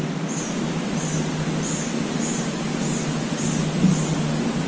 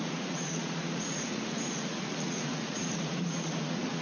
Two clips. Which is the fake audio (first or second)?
second